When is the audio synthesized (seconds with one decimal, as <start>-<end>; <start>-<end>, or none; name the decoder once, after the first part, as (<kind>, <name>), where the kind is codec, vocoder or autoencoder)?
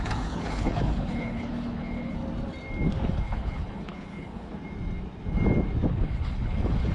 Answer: 0.0-2.2 (codec, HILCodec); 3.1-4.5; 5.9-6.9